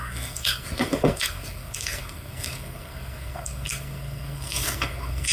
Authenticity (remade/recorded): remade